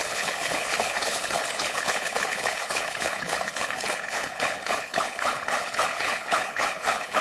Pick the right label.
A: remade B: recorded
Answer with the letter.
A